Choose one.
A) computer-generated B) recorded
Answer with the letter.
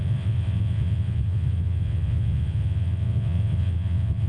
A